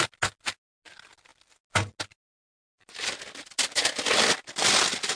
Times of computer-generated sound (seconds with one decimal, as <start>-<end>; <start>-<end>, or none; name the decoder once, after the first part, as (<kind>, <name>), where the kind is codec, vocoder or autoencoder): none